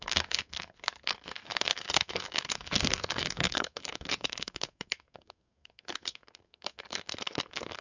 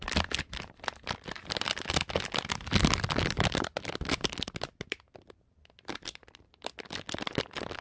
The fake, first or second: first